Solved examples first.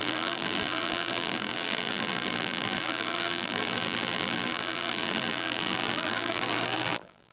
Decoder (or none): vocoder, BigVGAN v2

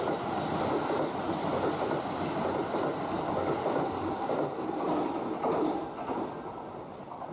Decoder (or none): none